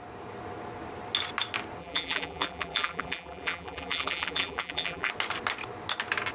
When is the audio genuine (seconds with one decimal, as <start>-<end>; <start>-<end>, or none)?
0.0-1.8; 5.1-6.3